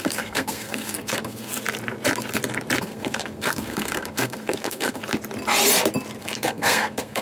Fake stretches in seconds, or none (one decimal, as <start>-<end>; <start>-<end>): 0.0-1.5; 2.8-5.0; 6.2-7.2